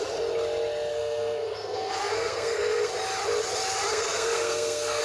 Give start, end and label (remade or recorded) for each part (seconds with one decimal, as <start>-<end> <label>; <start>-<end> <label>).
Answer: 0.0-0.9 recorded; 0.9-2.9 remade; 2.9-3.9 recorded; 3.9-5.0 remade